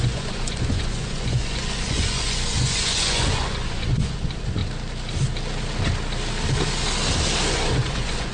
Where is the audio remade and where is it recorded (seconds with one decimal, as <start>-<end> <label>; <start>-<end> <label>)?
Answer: 0.0-4.6 remade; 4.6-7.5 recorded; 7.5-8.3 remade